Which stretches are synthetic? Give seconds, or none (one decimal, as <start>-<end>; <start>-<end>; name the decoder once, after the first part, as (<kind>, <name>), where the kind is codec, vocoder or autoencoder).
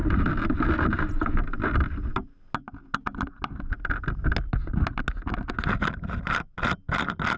none